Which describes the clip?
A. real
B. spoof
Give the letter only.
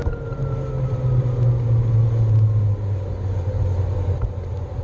A